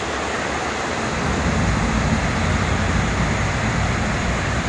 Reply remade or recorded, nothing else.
recorded